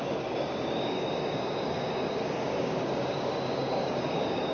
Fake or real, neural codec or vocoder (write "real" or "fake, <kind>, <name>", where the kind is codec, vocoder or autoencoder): fake, codec, DAC